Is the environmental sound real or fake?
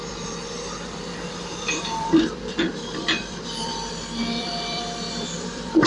fake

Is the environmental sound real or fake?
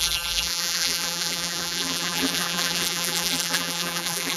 fake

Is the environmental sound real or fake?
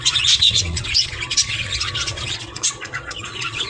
fake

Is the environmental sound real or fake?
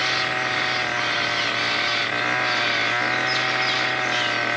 real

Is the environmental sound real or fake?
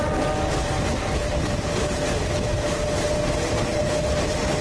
real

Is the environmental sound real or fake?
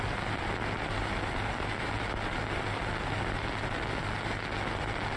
real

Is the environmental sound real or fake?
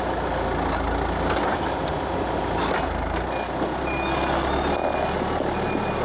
real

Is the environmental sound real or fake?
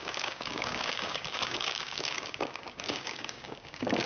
fake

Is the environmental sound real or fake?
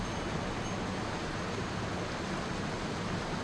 real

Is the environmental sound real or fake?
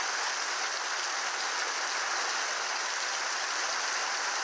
real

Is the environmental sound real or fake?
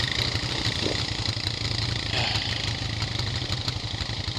real